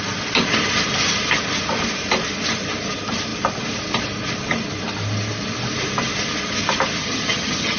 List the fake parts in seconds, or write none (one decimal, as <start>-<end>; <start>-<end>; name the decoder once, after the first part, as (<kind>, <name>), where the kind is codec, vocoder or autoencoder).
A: 7.0-7.8 (vocoder, HiFi-GAN)